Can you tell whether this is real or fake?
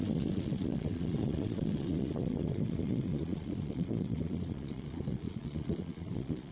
fake